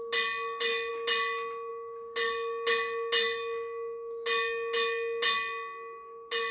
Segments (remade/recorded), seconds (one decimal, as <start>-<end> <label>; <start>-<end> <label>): 0.0-6.5 recorded